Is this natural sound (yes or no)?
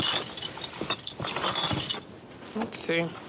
yes